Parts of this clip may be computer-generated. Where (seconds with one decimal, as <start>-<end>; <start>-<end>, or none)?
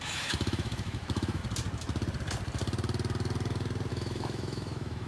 0.0-1.4; 3.9-5.1